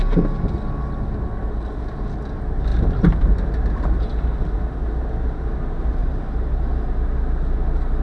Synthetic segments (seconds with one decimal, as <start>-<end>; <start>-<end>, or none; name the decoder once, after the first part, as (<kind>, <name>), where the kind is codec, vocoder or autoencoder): 6.0-6.7 (vocoder, BigVGAN v2)

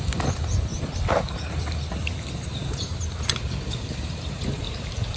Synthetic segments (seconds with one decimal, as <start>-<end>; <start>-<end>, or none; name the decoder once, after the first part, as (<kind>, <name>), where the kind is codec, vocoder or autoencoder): 0.0-0.7 (vocoder, BigVGAN v2); 3.3-5.2

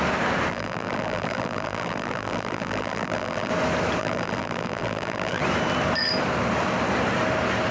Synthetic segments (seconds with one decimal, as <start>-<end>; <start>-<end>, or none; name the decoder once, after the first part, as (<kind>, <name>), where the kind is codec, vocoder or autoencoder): 0.5-3.5 (vocoder, BigVGAN v2); 4.0-5.4